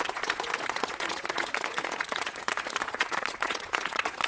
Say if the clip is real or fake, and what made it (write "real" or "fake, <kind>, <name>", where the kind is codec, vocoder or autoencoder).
fake, vocoder, Vocos